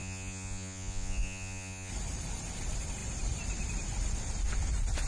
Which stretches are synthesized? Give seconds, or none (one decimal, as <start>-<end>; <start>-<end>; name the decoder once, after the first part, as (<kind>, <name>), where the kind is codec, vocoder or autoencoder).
0.0-1.9 (vocoder, Vocos)